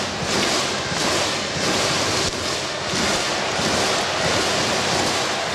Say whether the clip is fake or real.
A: real